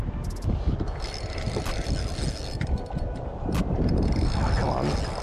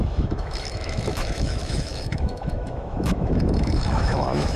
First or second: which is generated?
second